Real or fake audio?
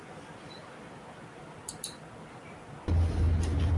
real